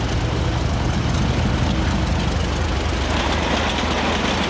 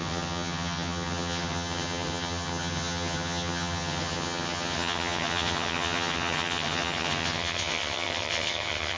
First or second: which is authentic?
first